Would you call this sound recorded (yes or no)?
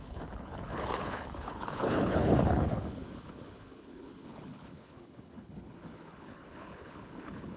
no